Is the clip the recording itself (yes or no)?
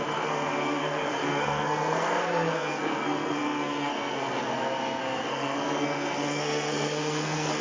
no